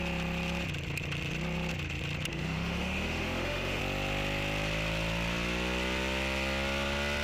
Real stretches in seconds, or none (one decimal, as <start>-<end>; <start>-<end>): 0.0-2.3; 3.8-7.2